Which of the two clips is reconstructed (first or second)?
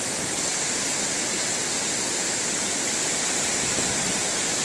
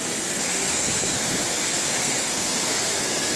second